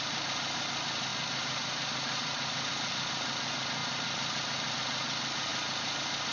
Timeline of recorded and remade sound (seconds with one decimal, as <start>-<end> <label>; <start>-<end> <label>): 0.0-1.1 recorded; 1.1-2.7 remade; 2.7-6.3 recorded